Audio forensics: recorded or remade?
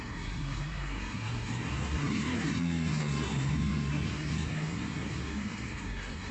remade